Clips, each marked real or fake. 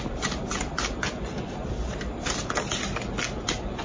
real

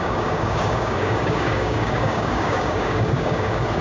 fake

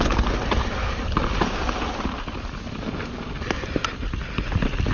real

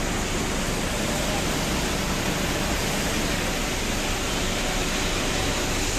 real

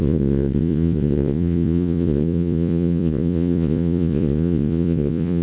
fake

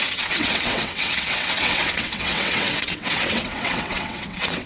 fake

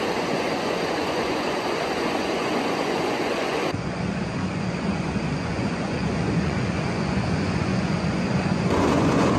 fake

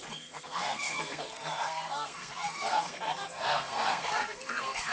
fake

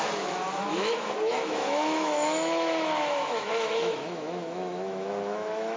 fake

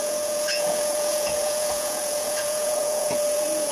fake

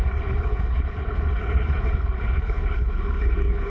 fake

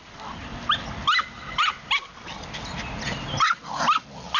real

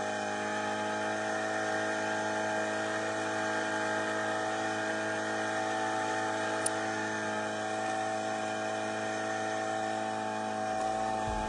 real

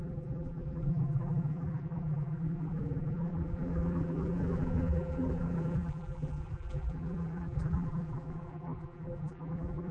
fake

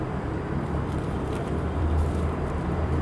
fake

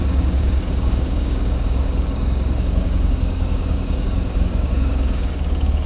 fake